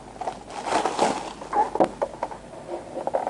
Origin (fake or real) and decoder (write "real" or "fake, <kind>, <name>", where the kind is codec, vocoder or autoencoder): real